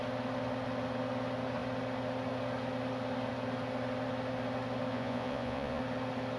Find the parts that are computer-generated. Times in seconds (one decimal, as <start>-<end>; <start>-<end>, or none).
4.9-5.8